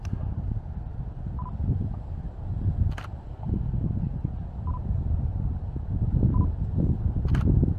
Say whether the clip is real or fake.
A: real